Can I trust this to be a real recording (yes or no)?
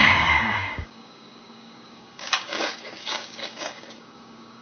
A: no